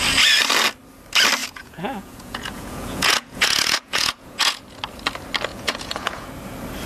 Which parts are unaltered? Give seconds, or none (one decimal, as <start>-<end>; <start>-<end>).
0.0-1.4; 4.6-5.5; 6.3-6.9